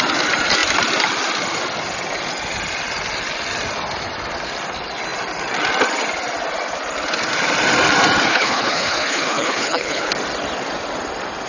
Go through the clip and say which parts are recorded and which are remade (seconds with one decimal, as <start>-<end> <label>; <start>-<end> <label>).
0.0-8.3 recorded; 8.3-10.1 remade; 10.1-11.5 recorded